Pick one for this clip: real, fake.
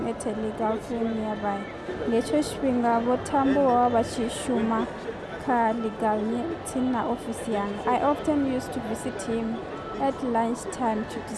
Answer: real